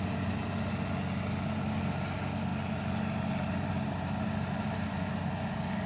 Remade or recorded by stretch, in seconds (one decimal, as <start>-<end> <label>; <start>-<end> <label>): 0.0-5.9 recorded